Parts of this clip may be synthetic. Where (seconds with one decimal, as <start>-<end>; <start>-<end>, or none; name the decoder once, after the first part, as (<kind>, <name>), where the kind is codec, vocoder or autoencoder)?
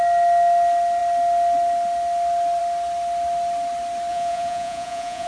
4.1-5.3 (vocoder, Vocos)